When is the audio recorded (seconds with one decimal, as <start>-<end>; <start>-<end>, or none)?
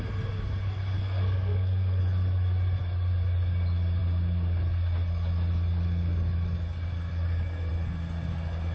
0.0-1.0; 2.0-8.7